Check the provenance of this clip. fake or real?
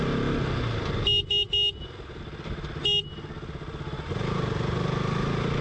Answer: real